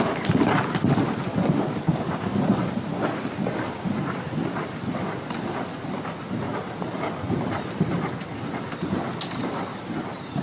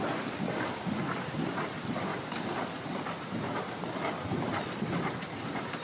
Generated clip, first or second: second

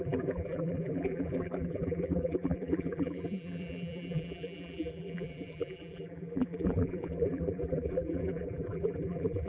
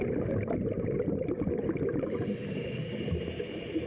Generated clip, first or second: first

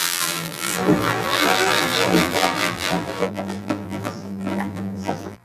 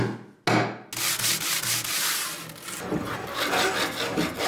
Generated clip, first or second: first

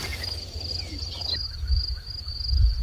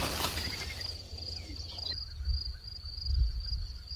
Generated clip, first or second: second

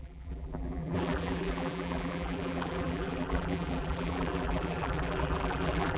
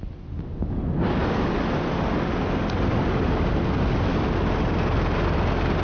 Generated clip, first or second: first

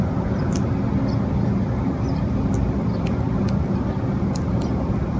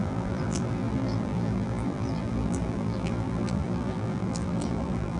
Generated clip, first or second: second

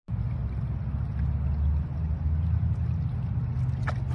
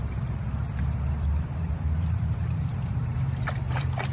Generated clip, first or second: second